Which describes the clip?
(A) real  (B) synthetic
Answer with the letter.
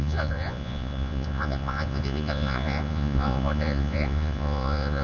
B